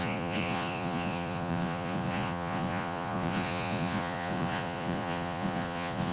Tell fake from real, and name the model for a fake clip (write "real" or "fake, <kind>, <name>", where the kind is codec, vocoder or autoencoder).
fake, vocoder, Vocos